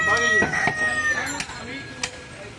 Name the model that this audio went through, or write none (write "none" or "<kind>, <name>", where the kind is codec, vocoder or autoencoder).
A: none